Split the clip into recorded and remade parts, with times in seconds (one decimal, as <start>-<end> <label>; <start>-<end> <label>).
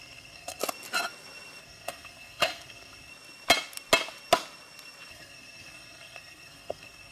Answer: 0.0-0.6 remade; 0.6-1.6 recorded; 1.6-3.1 remade; 3.1-5.1 recorded; 5.1-7.1 remade